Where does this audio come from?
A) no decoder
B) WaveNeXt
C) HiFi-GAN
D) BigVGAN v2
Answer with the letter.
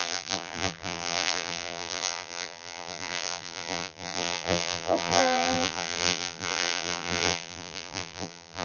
D